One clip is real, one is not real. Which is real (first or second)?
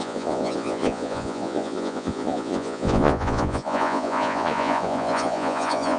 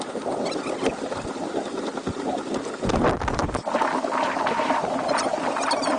second